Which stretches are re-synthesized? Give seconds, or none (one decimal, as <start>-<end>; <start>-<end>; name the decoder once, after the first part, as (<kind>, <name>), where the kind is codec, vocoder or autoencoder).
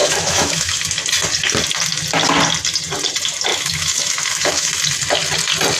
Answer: 0.0-0.8 (autoencoder, DAC-VAE); 3.5-4.7